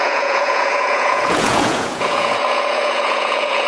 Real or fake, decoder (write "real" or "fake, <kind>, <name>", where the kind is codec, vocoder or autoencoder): fake, vocoder, Vocos